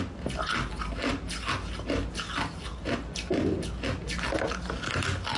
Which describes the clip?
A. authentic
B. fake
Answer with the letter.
A